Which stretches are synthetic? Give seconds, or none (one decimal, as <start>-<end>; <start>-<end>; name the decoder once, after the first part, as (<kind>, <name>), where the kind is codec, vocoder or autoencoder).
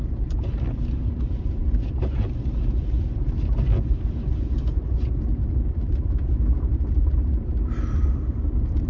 0.0-8.9 (vocoder, BigVGAN v2)